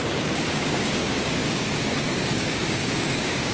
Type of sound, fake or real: fake